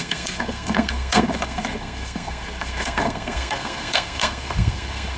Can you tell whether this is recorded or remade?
remade